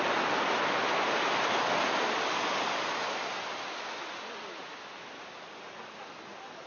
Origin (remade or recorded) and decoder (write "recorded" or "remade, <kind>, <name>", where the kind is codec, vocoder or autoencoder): recorded